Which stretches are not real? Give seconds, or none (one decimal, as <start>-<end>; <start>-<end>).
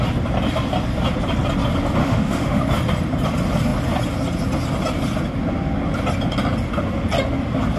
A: 2.0-2.6